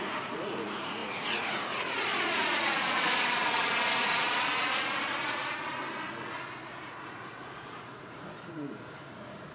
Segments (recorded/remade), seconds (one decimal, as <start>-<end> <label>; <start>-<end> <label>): 0.0-5.8 remade; 5.8-6.6 recorded; 6.6-9.5 remade